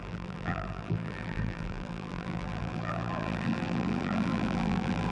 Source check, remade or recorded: remade